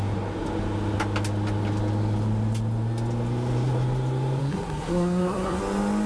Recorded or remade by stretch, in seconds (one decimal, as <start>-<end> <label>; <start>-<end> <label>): 0.0-4.4 recorded; 4.4-5.6 remade; 5.6-6.1 recorded